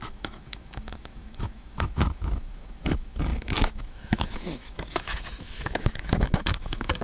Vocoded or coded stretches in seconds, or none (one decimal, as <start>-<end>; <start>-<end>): 0.0-7.0